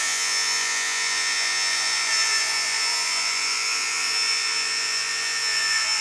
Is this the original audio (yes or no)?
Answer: no